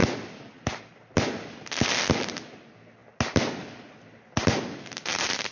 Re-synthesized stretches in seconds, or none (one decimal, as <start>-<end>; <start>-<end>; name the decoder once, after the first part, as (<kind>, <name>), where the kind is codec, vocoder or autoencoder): none